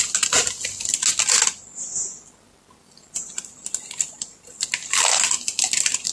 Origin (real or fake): real